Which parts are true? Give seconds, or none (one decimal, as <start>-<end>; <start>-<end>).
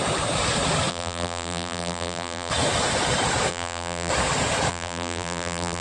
0.0-0.9; 2.5-3.5; 4.1-4.7